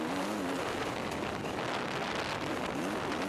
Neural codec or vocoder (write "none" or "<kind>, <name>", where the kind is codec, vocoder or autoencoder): none